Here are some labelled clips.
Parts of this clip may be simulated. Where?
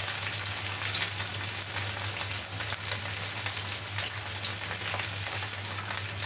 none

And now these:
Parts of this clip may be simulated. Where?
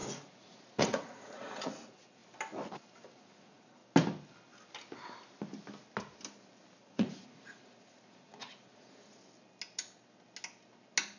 0.0-2.2; 3.1-3.8; 6.8-9.2